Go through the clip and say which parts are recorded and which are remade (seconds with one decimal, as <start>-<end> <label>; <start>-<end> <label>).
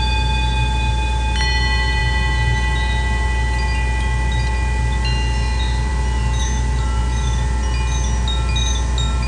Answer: 0.0-9.3 recorded